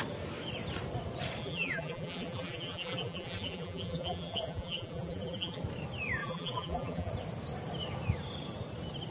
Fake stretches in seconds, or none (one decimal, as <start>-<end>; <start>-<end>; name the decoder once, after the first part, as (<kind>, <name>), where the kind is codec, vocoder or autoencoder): 1.4-5.6 (vocoder, BigVGAN v2); 6.2-7.1